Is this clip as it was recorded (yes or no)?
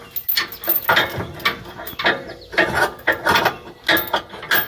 yes